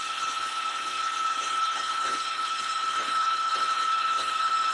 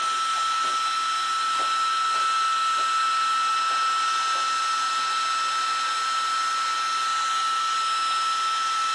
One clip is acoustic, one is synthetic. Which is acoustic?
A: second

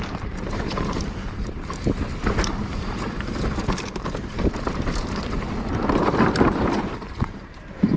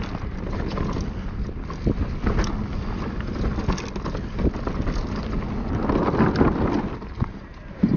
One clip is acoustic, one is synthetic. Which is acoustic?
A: second